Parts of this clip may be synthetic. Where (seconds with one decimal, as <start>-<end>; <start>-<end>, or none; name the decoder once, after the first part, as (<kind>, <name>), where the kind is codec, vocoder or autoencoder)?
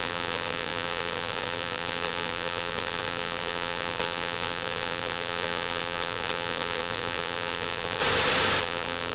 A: 0.0-8.0 (vocoder, BigVGAN v2); 8.6-9.1